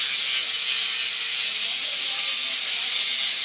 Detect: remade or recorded recorded